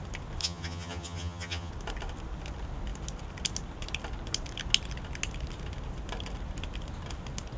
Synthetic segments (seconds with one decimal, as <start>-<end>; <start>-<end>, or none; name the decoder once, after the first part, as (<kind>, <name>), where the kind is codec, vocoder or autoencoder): 0.4-1.7 (vocoder, HiFi-GAN)